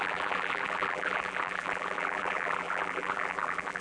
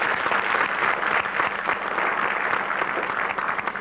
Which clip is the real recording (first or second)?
second